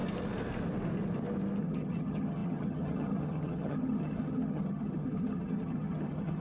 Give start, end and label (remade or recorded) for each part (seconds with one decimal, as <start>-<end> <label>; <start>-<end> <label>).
0.0-1.6 recorded; 1.6-6.4 remade